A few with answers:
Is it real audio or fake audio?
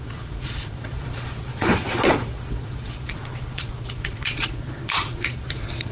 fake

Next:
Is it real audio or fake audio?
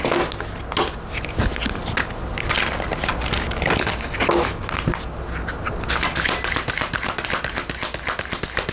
real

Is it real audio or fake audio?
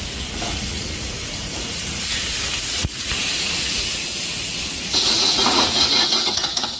fake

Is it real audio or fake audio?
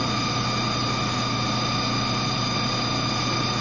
real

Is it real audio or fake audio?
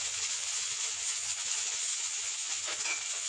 fake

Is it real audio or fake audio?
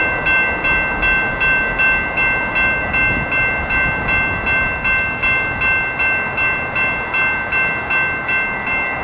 real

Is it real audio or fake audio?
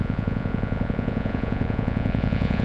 fake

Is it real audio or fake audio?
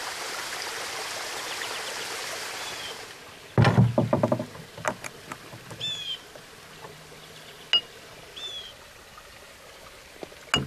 real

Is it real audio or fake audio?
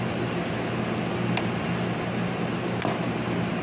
real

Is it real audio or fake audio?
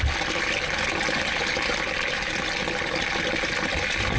real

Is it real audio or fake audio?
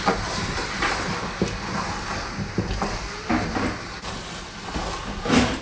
real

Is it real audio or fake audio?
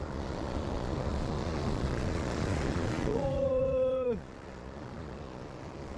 fake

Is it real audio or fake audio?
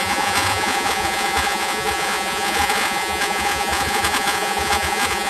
fake